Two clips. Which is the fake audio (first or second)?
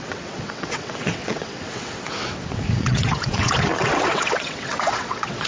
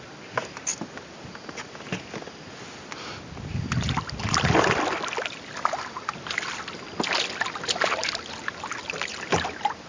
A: first